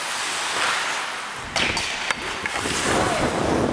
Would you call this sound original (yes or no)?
yes